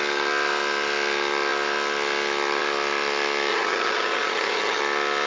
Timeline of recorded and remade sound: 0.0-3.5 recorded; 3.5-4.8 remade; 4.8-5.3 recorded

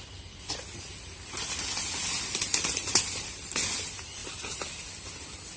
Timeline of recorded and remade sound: 0.0-5.6 recorded

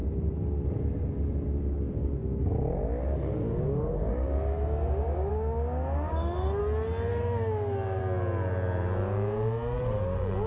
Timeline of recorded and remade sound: 0.0-1.6 recorded; 1.6-6.6 remade; 6.6-7.1 recorded; 7.1-8.0 remade; 8.0-10.5 recorded

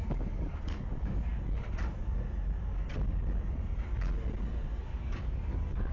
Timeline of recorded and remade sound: 0.0-1.3 remade; 1.3-4.8 recorded; 4.8-5.9 remade

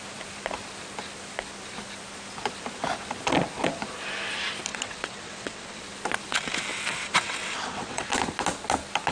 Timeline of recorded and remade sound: 0.0-4.7 recorded; 4.7-5.8 remade; 5.8-6.7 recorded; 6.7-8.1 remade; 8.1-9.1 recorded